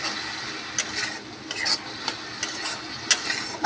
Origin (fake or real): real